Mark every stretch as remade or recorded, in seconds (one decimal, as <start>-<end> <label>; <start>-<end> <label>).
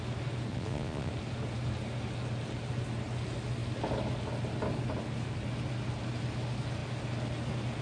0.0-0.5 recorded; 0.5-1.1 remade; 1.1-7.8 recorded